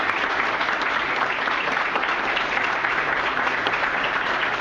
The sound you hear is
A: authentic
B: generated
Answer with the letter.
B